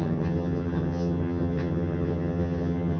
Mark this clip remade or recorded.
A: remade